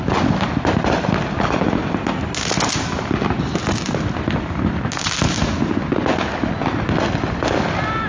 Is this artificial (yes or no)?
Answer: no